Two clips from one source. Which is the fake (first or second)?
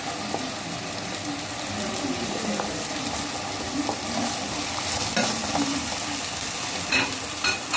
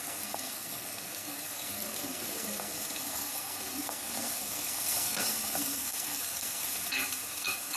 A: second